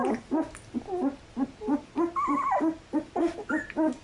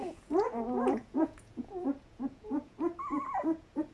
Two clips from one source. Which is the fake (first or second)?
second